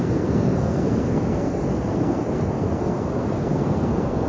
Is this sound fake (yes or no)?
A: yes